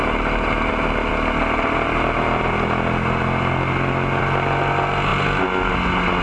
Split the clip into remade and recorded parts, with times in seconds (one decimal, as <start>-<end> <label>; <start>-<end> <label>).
0.0-6.2 recorded